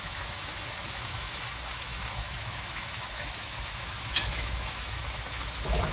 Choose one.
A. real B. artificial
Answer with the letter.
B